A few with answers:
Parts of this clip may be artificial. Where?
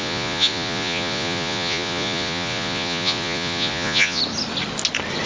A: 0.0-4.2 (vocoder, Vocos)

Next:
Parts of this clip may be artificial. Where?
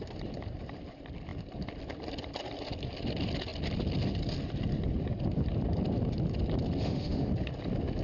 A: 6.8-7.3 (autoencoder, DAC-VAE)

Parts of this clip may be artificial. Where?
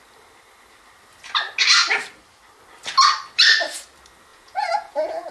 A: 4.3-5.3 (vocoder, Vocos)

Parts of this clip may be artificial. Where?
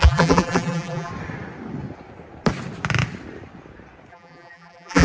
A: 0.0-1.1 (vocoder, BigVGAN v2); 4.1-5.0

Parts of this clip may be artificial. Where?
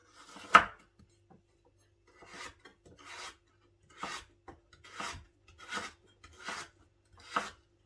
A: 0.0-1.0 (vocoder, BigVGAN v2); 2.7-3.5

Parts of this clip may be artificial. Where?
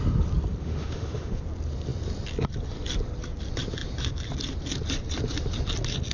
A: 0.6-1.4 (autoencoder, DAC-VAE)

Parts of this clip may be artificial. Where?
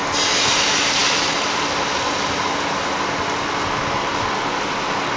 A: none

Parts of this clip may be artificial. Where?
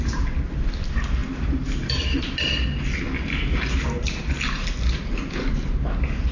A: none